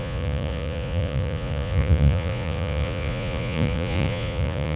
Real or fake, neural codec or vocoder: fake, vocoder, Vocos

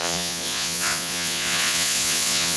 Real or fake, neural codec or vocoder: fake, vocoder, Vocos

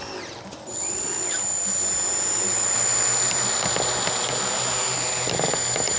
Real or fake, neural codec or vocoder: real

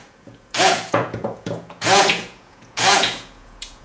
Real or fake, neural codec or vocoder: fake, vocoder, Vocos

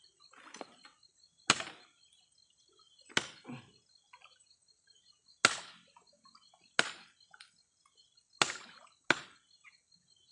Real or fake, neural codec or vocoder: real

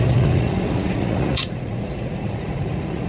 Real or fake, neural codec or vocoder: fake, vocoder, Vocos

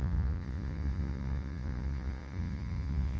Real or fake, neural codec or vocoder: fake, vocoder, Vocos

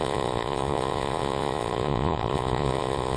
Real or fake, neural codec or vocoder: fake, vocoder, Vocos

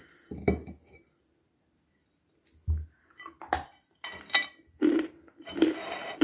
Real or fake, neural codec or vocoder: real